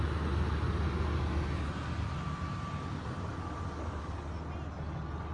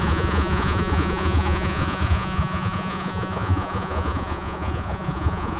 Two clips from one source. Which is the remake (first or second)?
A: second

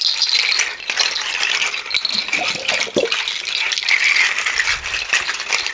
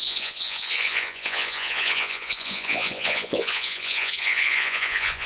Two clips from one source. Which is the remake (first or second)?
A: second